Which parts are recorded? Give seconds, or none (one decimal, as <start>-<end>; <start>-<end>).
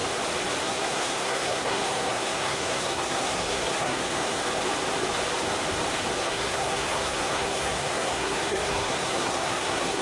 0.0-0.6; 4.4-6.2